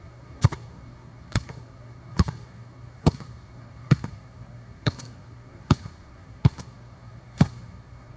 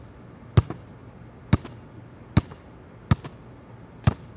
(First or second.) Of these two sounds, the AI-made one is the first